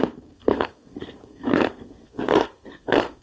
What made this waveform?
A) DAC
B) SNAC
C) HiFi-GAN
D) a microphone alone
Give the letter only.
B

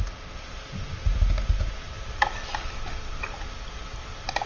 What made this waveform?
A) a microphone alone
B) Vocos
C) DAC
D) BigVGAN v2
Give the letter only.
A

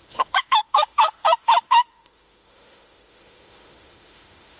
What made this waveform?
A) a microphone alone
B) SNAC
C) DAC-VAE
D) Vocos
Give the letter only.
C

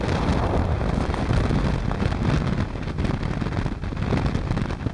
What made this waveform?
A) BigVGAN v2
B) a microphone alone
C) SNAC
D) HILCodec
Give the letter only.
B